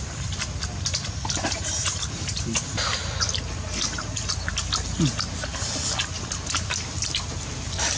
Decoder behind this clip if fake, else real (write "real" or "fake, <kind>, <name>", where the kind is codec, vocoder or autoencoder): real